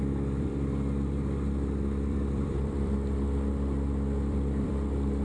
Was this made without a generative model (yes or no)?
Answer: no